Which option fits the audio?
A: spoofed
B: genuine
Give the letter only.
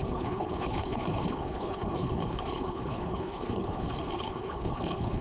A